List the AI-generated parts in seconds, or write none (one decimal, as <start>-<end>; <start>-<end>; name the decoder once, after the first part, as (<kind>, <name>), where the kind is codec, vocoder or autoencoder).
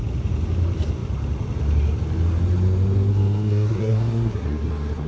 3.1-5.1 (codec, SNAC)